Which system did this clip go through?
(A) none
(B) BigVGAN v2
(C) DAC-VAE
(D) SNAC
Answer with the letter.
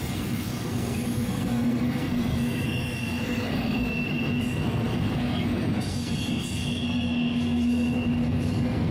D